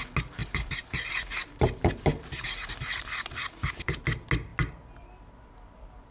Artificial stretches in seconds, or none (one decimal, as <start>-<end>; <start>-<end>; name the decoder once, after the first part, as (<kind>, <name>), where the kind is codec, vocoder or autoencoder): 0.4-4.0 (vocoder, BigVGAN v2)

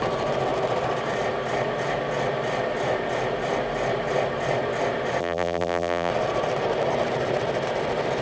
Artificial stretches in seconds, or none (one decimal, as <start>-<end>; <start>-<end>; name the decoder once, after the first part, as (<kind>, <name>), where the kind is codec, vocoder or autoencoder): 5.2-6.1 (vocoder, BigVGAN v2)

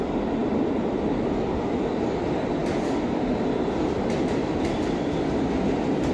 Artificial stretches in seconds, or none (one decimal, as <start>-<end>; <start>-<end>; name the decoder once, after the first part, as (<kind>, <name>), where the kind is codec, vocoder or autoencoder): 0.0-2.6 (vocoder, BigVGAN v2)

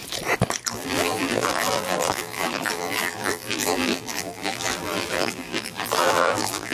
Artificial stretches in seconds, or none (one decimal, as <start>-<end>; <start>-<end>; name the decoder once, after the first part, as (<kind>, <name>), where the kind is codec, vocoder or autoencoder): 0.7-6.7 (vocoder, BigVGAN v2)

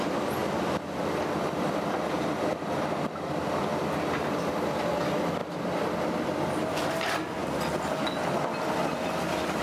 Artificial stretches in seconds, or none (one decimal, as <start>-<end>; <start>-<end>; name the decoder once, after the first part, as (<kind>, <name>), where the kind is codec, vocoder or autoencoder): 0.4-3.6 (vocoder, BigVGAN v2); 5.4-6.0

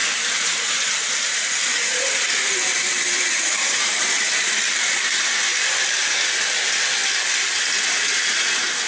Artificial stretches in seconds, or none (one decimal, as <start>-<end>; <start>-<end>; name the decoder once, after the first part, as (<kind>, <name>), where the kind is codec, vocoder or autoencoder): 0.0-5.1 (vocoder, BigVGAN v2)

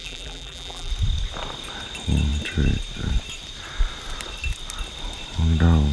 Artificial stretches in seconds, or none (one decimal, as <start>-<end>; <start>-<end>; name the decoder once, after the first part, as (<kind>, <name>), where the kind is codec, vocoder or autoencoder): 0.0-0.9 (vocoder, BigVGAN v2)

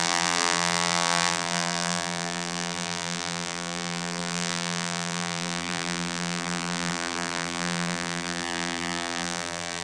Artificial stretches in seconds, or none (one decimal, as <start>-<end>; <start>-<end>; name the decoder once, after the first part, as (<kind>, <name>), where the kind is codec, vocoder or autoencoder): 0.0-9.8 (vocoder, BigVGAN v2)